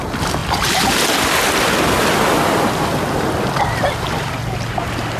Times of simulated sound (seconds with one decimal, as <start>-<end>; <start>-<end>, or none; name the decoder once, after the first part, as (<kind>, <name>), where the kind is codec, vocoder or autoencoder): none